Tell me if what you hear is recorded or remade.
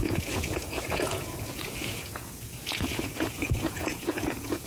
remade